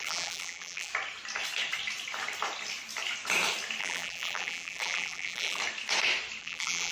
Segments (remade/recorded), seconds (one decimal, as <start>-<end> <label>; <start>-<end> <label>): 0.0-0.9 remade; 0.9-3.8 recorded; 3.8-5.6 remade; 5.6-6.4 recorded; 6.4-6.9 remade